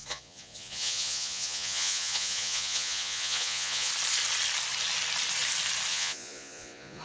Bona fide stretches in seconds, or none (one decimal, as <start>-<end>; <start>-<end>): 3.9-5.9